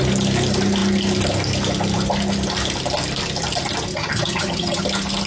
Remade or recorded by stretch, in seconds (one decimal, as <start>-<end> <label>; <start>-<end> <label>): 0.0-3.9 recorded; 3.9-4.8 remade; 4.8-5.3 recorded